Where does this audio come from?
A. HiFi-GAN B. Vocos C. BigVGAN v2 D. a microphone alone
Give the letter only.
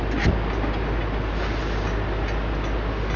D